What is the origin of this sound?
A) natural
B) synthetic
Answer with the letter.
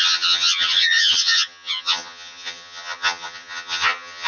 B